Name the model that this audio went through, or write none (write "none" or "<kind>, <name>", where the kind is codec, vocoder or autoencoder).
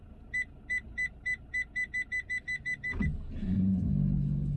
none